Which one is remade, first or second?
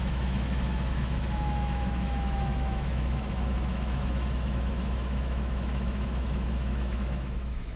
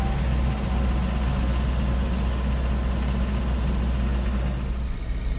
first